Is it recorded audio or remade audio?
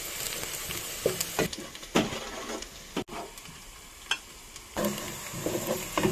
recorded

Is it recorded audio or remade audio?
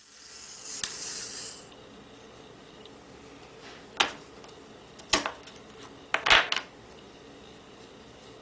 recorded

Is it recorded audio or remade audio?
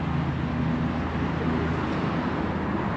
recorded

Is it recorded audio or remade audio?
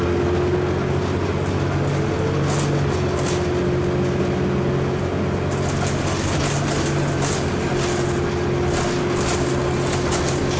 recorded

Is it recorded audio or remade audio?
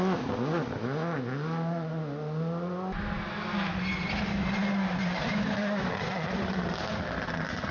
recorded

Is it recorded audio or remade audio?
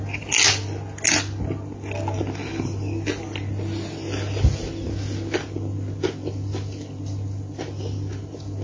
recorded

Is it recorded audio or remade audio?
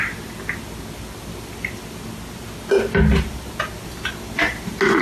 recorded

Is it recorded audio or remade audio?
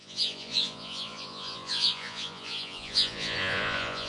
remade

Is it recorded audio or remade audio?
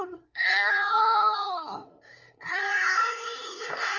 remade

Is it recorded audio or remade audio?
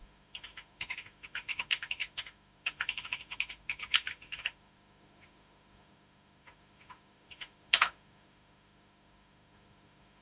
remade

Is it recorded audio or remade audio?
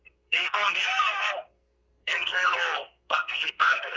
remade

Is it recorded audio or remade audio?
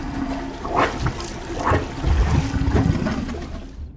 recorded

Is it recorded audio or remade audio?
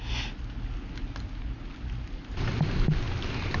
recorded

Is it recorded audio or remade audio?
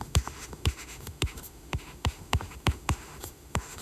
remade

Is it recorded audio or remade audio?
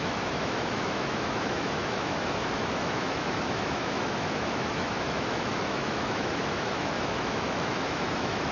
remade